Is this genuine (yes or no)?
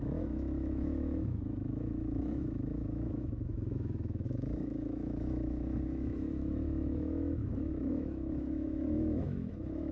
no